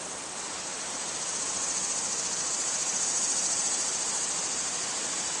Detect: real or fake real